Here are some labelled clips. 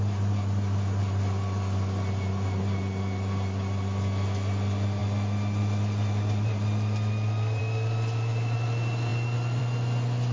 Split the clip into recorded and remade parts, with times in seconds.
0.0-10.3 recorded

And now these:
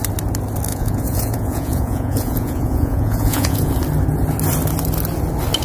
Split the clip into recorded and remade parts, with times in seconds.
0.0-0.7 recorded; 0.7-3.7 remade; 3.7-5.6 recorded